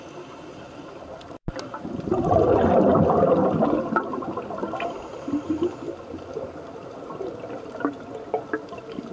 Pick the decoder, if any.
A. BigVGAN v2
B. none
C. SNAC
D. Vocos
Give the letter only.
B